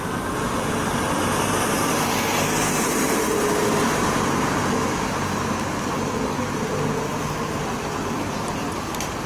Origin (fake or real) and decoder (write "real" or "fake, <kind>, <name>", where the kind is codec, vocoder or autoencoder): real